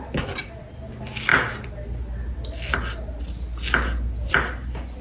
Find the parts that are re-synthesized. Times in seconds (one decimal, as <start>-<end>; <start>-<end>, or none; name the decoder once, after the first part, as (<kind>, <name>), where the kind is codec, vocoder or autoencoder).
none